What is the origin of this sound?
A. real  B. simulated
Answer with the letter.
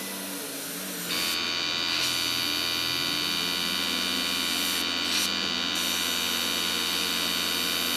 A